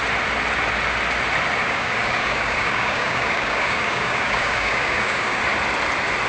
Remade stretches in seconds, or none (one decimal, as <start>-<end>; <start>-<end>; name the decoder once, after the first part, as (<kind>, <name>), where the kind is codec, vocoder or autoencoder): 1.6-5.4 (codec, DAC)